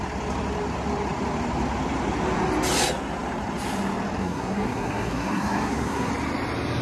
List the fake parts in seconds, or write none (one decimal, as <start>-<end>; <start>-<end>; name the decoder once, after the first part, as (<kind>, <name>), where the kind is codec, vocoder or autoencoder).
4.2-6.1 (codec, SNAC)